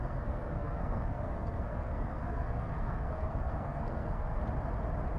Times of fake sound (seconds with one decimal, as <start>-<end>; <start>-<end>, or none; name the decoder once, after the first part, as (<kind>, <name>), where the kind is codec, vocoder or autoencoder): 0.0-4.4 (codec, SNAC)